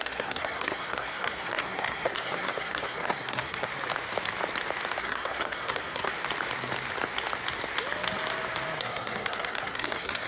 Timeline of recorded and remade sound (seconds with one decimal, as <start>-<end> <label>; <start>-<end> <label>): 0.0-3.7 remade; 3.7-5.0 recorded; 5.0-6.1 remade; 6.1-8.8 recorded; 8.8-10.3 remade